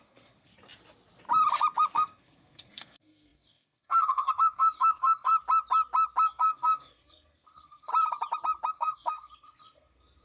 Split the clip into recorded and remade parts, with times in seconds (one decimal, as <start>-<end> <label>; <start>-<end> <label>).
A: 0.0-0.5 remade; 0.5-1.9 recorded; 1.9-5.3 remade; 5.3-6.2 recorded; 6.2-7.9 remade; 7.9-8.7 recorded; 8.7-10.2 remade